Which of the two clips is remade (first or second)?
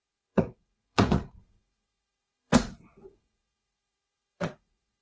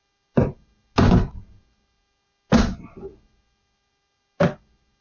first